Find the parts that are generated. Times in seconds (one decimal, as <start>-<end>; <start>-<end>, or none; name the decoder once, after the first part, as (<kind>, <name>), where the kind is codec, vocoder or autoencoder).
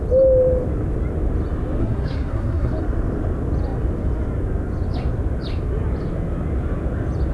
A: 1.8-2.7 (codec, SNAC)